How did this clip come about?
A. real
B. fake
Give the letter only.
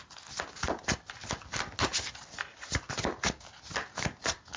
A